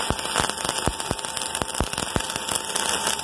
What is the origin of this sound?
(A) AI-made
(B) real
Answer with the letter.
B